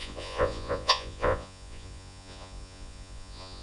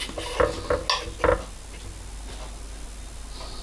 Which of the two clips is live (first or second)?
second